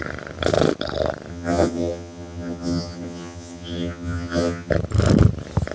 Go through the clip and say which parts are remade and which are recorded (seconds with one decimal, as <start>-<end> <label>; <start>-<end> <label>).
0.0-1.3 recorded; 1.3-4.7 remade; 4.7-5.7 recorded